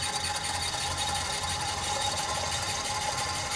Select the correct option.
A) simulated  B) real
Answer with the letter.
B